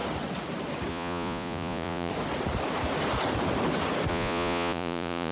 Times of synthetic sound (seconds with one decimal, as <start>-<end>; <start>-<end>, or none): 0.9-2.1; 4.1-5.3